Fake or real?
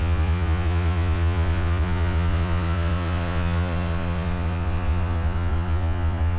fake